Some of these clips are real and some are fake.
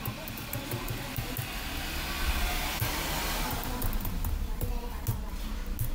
real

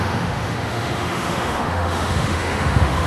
fake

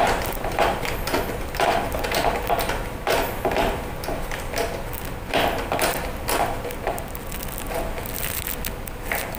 real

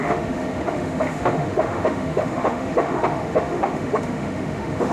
fake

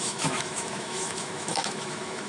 fake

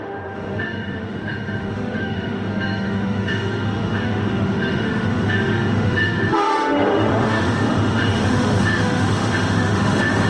fake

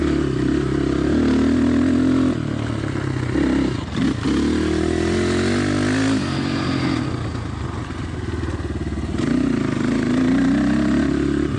real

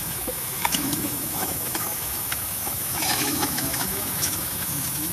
fake